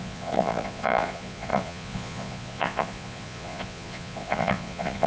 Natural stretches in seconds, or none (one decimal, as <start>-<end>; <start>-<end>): none